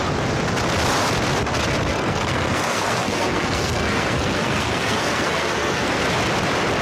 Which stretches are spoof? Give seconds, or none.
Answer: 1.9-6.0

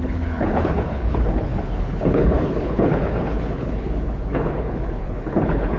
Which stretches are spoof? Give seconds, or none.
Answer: 0.0-5.8